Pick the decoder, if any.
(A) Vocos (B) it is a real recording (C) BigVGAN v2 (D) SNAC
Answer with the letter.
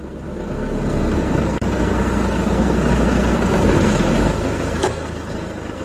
D